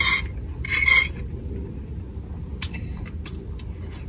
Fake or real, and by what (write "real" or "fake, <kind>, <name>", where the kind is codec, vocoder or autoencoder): real